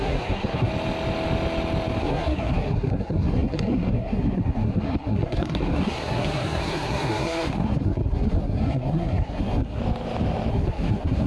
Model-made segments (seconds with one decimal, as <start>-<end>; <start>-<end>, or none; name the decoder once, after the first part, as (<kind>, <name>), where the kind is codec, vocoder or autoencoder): 0.0-0.7 (codec, SNAC); 2.0-9.8; 10.5-11.3